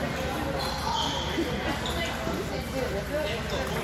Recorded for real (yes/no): yes